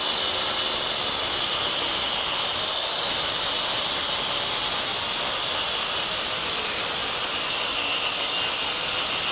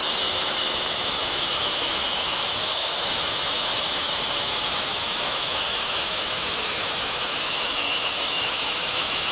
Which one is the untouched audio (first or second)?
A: first